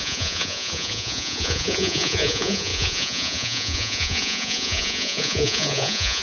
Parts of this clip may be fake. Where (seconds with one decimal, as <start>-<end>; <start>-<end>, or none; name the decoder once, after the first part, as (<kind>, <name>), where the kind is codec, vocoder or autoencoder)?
0.0-6.2 (vocoder, Vocos)